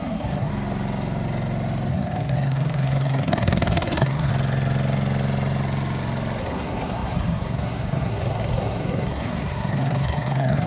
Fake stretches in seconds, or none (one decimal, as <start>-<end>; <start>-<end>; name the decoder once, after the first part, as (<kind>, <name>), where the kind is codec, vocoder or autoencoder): 0.0-0.5 (codec, SNAC); 1.9-4.3; 6.4-10.7